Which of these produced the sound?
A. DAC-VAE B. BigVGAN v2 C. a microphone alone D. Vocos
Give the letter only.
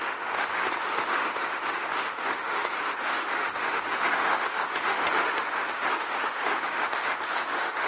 A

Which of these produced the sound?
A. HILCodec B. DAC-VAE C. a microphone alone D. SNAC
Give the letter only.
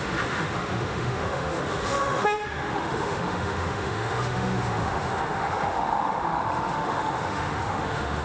B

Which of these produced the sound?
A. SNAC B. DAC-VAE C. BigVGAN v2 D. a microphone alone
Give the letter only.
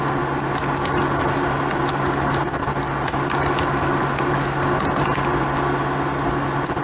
D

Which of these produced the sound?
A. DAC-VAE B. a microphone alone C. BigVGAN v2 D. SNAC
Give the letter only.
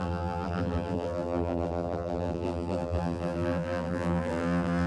C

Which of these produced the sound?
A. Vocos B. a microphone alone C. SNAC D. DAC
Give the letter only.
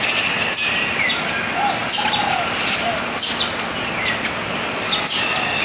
B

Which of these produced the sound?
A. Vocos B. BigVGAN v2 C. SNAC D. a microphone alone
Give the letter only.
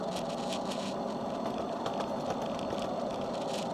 D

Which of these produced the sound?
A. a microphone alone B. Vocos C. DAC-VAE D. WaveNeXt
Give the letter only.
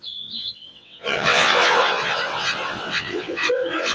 D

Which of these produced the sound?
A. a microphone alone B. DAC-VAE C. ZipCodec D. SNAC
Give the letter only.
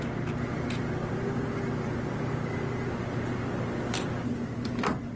A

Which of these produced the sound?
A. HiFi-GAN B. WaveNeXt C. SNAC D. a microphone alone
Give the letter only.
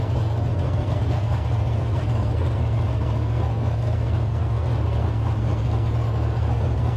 C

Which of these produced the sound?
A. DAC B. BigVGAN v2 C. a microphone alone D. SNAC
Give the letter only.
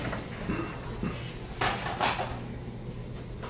C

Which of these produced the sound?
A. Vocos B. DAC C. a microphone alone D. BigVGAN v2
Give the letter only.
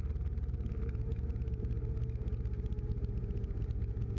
C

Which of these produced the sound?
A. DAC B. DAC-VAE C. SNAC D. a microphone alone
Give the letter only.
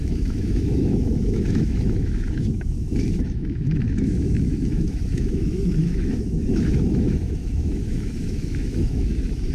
B